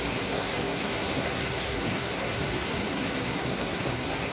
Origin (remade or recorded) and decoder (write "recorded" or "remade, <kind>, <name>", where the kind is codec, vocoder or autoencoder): remade, codec, SNAC